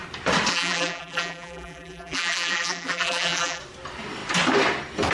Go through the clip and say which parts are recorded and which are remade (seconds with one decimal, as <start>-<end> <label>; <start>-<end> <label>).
0.0-0.5 recorded; 0.5-3.6 remade; 3.6-5.1 recorded